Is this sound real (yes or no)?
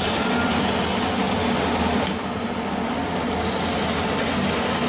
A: yes